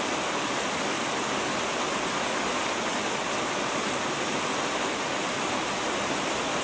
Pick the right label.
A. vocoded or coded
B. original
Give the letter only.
B